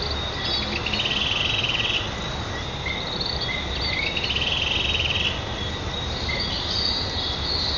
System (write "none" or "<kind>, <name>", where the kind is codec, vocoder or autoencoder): none